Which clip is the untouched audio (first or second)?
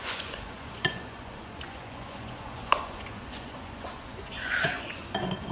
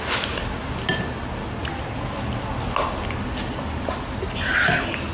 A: second